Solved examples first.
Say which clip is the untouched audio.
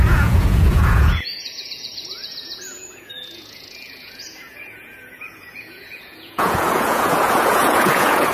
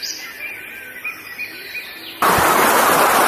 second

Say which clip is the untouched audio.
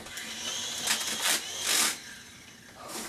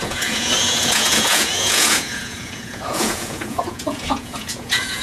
first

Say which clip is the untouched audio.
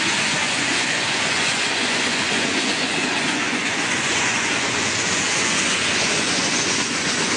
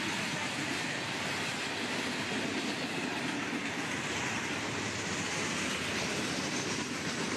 second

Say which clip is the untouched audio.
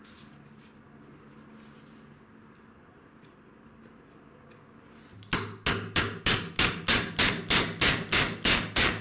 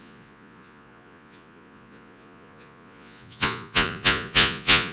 first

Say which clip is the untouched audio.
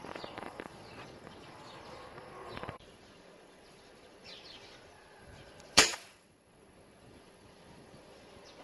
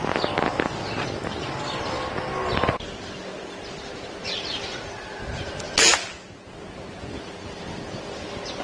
second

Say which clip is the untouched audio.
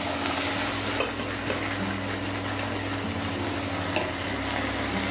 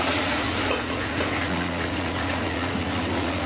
first